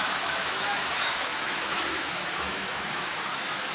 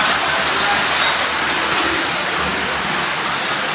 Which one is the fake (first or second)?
first